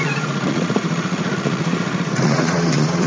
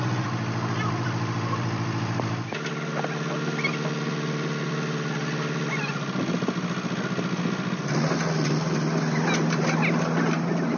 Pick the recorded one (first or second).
second